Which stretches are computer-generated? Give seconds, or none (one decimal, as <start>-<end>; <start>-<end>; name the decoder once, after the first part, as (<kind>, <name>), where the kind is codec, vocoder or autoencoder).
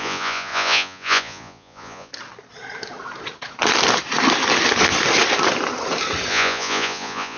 0.0-2.1 (vocoder, Vocos); 6.3-7.4